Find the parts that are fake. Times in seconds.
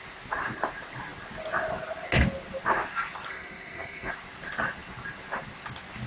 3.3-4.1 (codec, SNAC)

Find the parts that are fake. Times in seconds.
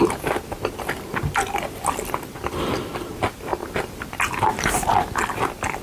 none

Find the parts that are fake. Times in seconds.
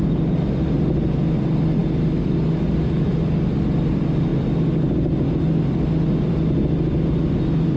none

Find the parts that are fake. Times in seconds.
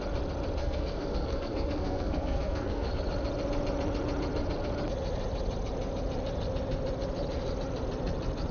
0.6-2.9 (codec, SNAC)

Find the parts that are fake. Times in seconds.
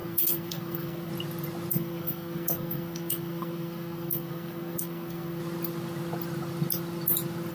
0.0-1.1 (codec, SNAC); 1.7-5.4